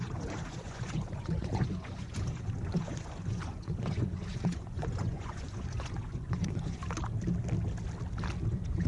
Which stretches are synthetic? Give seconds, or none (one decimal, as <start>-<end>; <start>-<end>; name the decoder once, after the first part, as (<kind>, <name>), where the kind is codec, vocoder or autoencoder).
0.0-6.8 (vocoder, Vocos); 8.5-8.9

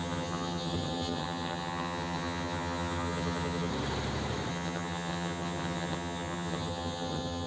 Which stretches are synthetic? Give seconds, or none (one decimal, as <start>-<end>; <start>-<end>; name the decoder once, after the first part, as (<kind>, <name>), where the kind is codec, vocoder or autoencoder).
0.0-3.7 (vocoder, HiFi-GAN); 4.5-7.5

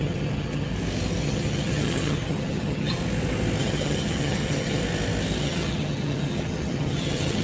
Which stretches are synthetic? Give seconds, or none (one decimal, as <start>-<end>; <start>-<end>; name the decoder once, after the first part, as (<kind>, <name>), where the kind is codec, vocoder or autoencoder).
0.0-0.7 (vocoder, HiFi-GAN); 1.2-3.0; 3.6-4.8; 5.4-7.4